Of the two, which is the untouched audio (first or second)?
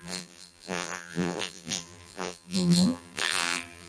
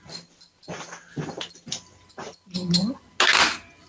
second